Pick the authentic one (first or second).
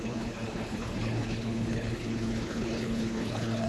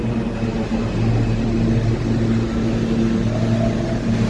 second